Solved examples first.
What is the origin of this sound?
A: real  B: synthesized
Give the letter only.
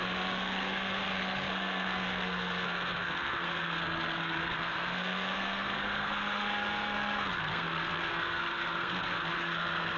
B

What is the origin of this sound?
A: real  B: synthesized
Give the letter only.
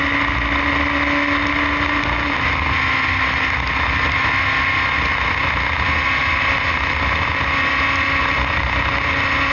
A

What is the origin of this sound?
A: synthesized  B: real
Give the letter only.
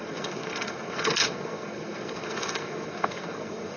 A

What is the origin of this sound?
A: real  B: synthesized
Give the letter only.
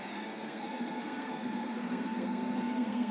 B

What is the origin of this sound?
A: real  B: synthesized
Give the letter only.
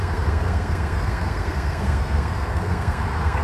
B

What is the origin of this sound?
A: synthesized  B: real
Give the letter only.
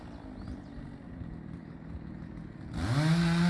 B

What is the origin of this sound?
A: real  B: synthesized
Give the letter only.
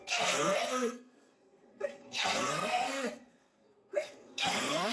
B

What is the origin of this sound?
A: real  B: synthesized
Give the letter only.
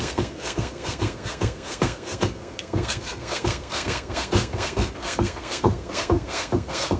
B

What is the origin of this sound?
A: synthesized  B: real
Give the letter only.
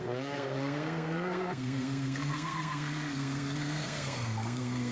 A